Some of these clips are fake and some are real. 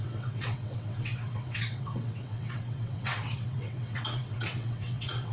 fake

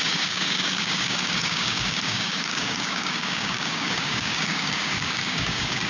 fake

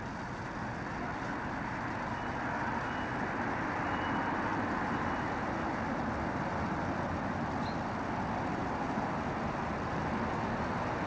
real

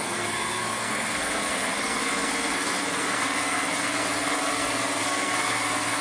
fake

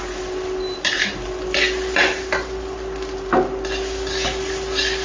real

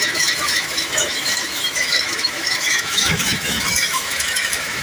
fake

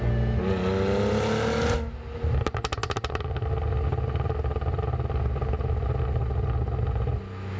real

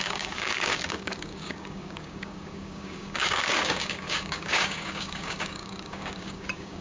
fake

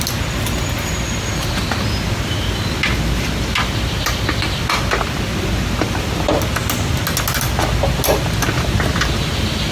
real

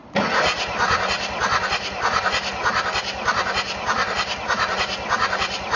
real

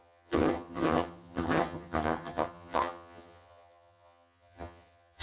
fake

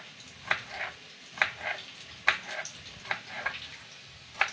real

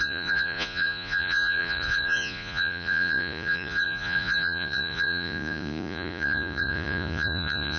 fake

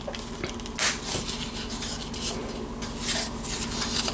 real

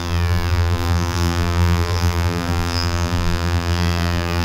fake